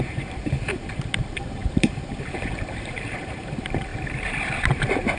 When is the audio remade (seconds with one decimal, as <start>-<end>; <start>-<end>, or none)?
0.0-3.9; 4.7-5.2